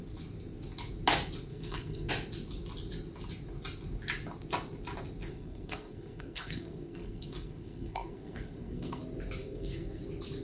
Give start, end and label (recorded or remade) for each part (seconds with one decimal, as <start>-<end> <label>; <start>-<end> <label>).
0.0-1.5 recorded; 1.5-2.1 remade; 2.1-5.3 recorded; 5.3-9.0 remade; 9.0-9.4 recorded; 9.4-10.0 remade; 10.0-10.4 recorded